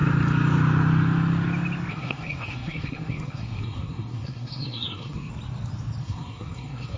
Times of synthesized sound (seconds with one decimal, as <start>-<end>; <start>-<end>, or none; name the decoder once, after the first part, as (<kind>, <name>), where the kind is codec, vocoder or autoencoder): 1.9-5.3 (codec, SNAC); 6.0-7.0